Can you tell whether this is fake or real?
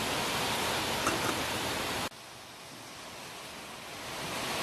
real